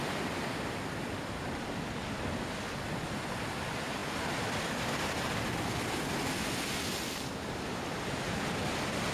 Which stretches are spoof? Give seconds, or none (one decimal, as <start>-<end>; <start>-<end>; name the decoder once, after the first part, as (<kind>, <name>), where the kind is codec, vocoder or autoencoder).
none